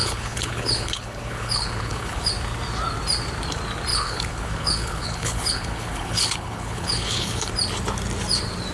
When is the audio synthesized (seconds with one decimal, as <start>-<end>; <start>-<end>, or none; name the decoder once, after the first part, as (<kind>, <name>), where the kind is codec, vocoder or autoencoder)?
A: 0.0-2.3 (codec, HILCodec); 3.9-7.5